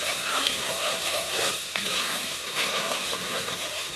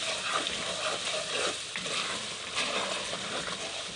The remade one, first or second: first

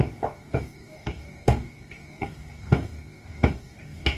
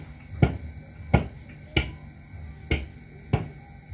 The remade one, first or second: first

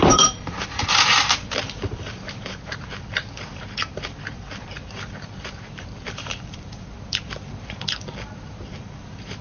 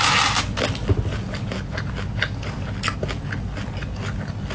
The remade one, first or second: first